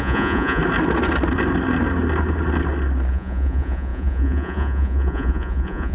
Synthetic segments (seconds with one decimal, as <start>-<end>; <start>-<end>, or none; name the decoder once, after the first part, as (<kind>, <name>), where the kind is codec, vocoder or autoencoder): 0.0-0.6 (vocoder, Vocos); 3.1-5.9